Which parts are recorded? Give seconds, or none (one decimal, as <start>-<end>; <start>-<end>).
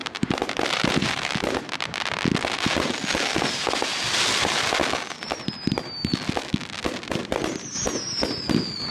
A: 1.7-8.9